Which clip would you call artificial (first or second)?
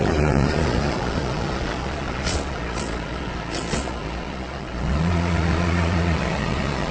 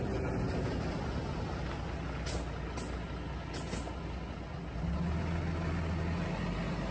first